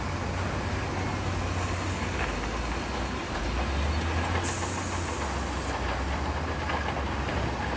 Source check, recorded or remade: recorded